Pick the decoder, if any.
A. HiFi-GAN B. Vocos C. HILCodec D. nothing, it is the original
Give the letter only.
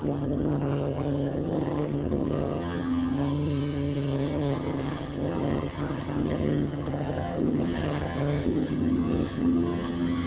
A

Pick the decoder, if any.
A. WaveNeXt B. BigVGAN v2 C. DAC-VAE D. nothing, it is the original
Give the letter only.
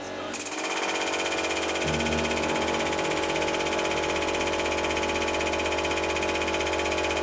D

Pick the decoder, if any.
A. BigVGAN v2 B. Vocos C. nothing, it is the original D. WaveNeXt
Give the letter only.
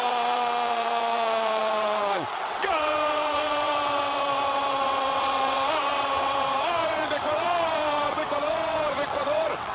D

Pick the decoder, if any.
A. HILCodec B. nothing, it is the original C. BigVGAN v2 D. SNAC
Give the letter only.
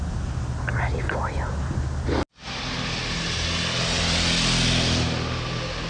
B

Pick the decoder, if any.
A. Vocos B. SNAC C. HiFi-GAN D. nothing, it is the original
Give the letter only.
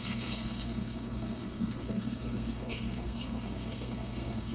B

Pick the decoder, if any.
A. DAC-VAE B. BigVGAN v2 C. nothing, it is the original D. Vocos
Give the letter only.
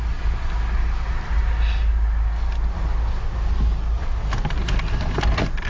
C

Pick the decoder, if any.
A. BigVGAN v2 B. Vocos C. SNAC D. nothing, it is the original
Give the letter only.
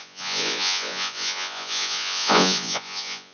B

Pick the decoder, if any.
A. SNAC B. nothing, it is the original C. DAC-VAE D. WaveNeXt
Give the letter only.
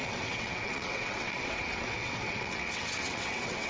D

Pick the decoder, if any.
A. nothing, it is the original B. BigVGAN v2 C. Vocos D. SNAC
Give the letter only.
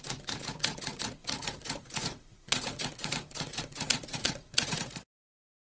C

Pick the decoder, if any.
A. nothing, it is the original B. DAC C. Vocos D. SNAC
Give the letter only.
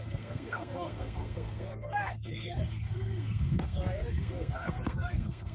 D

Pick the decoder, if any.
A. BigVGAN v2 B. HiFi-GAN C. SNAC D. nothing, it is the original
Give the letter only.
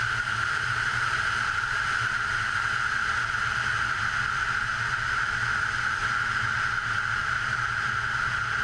D